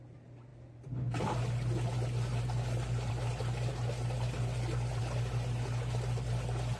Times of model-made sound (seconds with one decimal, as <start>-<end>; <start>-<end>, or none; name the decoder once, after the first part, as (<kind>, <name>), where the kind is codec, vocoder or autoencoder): none